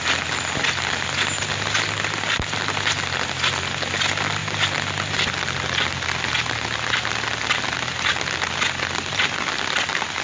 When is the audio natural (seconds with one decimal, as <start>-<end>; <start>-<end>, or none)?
0.0-10.2